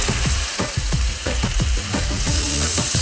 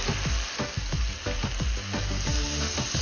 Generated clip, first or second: first